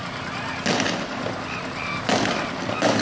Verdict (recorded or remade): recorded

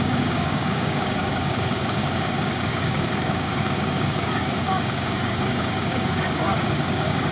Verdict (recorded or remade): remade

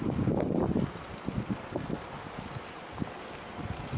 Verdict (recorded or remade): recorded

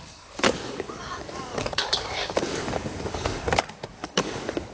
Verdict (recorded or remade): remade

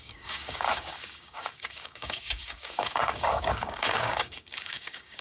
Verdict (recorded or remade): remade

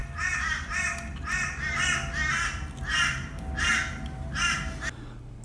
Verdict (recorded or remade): recorded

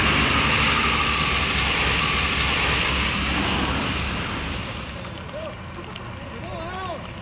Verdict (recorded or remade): recorded